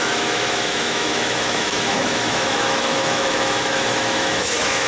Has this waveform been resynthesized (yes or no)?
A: yes